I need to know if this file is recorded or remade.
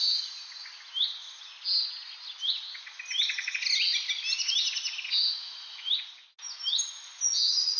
recorded